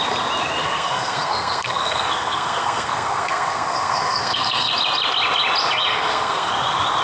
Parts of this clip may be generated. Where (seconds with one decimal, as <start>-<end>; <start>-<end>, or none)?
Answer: 0.6-4.7; 5.9-6.5